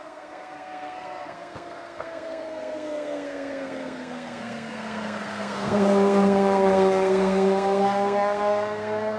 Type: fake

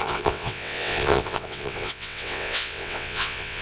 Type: fake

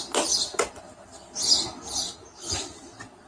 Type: real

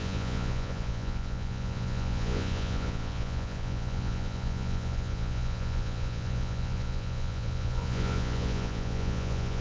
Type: fake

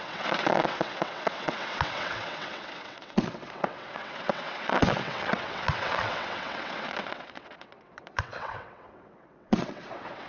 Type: fake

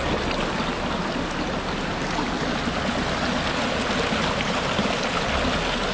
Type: real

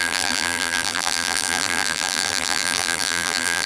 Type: fake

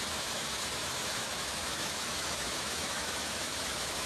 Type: fake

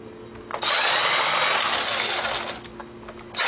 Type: real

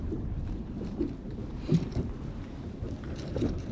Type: fake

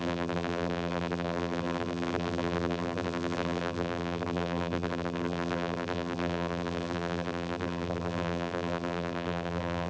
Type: fake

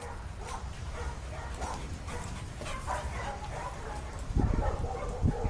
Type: fake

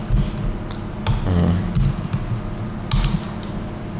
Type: real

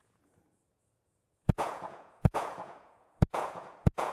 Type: fake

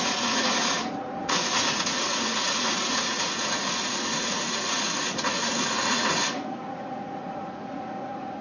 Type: fake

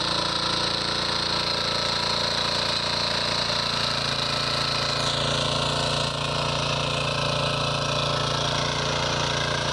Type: real